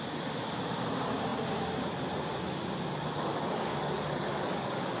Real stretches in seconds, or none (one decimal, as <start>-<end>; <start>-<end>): 0.0-3.3